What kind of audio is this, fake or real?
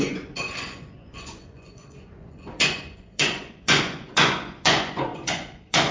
fake